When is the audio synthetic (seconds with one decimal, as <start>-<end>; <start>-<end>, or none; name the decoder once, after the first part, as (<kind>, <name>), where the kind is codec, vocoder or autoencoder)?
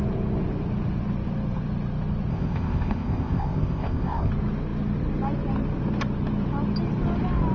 2.3-4.3 (codec, ZipCodec)